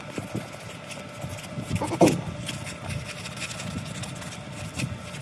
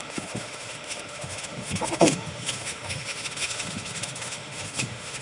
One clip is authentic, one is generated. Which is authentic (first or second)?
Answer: first